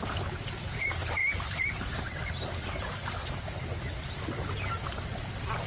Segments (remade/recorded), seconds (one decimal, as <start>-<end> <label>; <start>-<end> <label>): 0.0-5.7 recorded

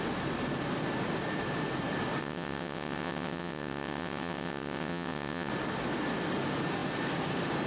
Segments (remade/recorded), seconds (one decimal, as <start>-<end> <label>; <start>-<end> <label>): 0.0-2.2 recorded; 2.2-5.5 remade; 5.5-7.7 recorded

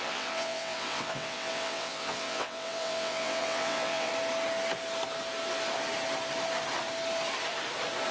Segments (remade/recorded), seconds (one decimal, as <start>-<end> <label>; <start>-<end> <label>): 0.0-4.1 remade; 4.1-8.1 recorded

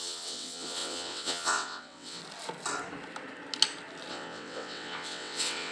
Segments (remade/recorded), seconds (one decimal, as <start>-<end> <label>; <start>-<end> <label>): 0.0-2.2 remade; 2.2-4.1 recorded; 4.1-5.7 remade

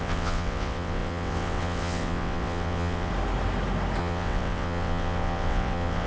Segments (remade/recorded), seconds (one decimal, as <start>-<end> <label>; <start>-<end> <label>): 0.0-3.1 remade; 3.1-4.0 recorded; 4.0-6.1 remade

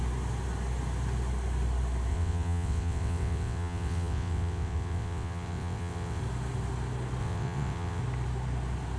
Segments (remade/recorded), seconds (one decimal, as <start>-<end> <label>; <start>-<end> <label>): 0.0-2.1 recorded; 2.1-6.2 remade; 6.2-7.2 recorded; 7.2-8.0 remade; 8.0-9.0 recorded

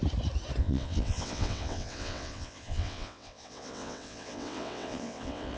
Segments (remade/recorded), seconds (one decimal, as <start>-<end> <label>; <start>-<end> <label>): 0.0-0.6 recorded; 0.6-5.6 remade